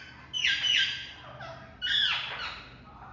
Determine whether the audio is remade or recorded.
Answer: recorded